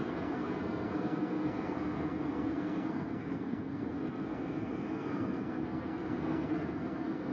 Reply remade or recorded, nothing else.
remade